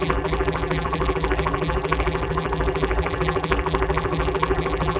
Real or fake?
fake